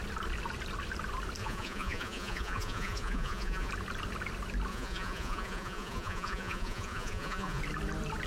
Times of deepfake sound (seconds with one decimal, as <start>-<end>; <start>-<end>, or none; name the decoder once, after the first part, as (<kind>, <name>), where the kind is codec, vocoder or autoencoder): 1.4-3.7 (vocoder, Vocos); 4.7-7.6